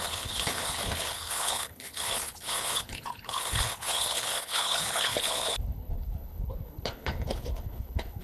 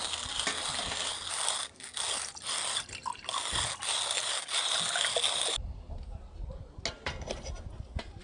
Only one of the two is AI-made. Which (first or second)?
first